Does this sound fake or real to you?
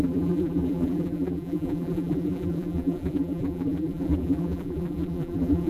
fake